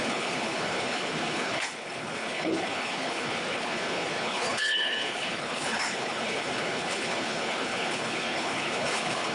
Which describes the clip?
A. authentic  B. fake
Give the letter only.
B